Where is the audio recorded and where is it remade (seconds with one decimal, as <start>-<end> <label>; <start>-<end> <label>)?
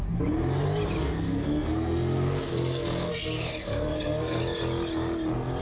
0.0-1.0 recorded; 1.0-4.4 remade; 4.4-5.6 recorded